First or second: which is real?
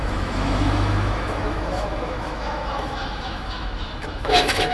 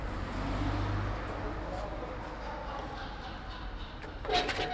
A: second